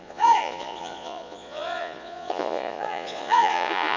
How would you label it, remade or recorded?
remade